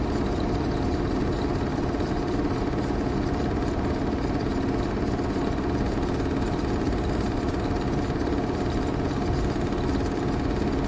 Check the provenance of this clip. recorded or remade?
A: recorded